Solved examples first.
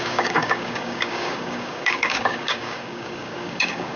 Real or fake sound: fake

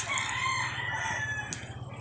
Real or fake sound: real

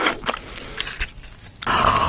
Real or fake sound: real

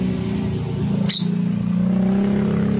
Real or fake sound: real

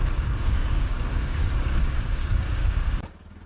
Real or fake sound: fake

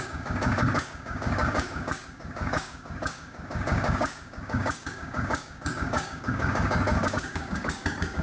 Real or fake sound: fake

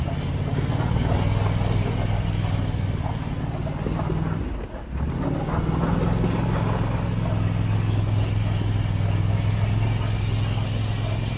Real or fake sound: real